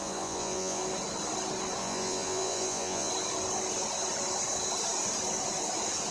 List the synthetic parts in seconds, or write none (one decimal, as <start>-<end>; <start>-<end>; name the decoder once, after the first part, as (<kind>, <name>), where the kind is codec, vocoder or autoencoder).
0.0-0.8 (vocoder, Vocos); 1.8-3.1